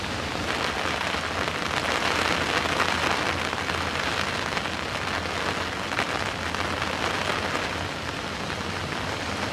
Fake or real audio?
real